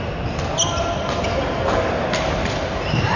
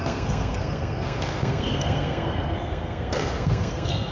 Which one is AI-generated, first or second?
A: second